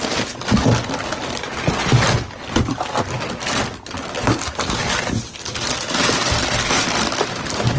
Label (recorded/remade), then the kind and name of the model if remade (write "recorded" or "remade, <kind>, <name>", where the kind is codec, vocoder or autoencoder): recorded